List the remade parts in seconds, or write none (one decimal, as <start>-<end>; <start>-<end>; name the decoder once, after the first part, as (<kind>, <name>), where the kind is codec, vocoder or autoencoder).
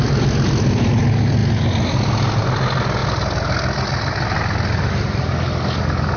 none